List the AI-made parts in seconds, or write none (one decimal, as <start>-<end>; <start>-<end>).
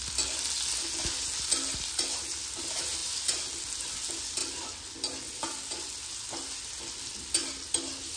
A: none